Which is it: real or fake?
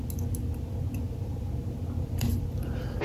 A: real